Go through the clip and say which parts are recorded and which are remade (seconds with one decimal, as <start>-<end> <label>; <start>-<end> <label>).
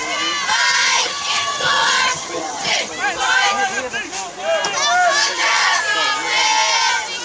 0.0-0.8 recorded; 0.8-2.9 remade; 2.9-5.2 recorded; 5.2-5.8 remade; 5.8-7.2 recorded